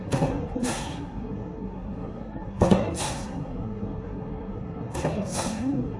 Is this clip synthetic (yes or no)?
yes